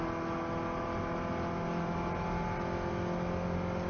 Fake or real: real